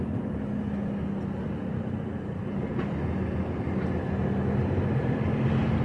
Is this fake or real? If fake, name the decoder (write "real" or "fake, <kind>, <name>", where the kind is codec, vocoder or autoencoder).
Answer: real